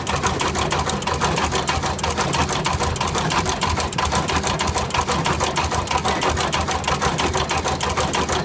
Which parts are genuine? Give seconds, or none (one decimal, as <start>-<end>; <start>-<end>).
0.0-2.4; 4.1-8.4